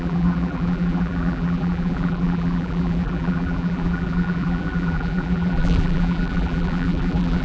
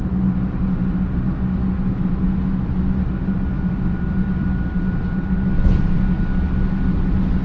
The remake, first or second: first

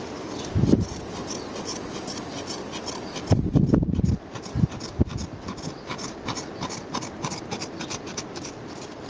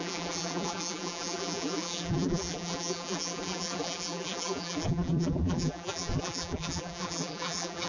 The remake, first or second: second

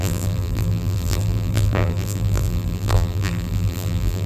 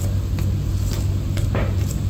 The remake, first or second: first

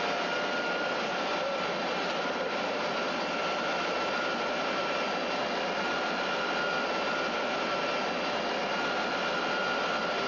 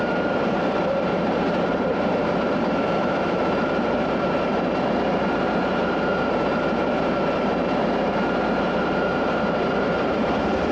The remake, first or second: second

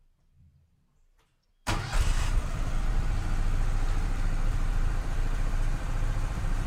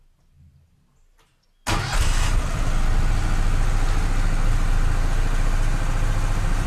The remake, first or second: first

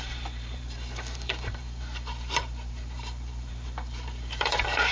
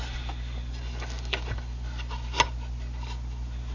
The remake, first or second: first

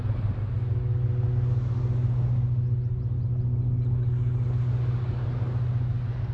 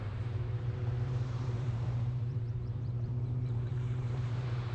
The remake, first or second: second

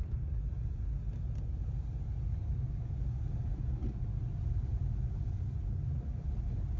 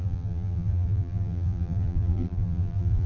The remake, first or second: second